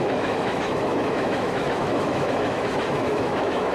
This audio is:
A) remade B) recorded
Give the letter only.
A